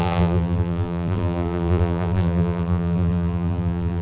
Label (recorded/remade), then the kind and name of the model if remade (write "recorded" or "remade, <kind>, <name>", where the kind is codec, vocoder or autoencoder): remade, vocoder, BigVGAN v2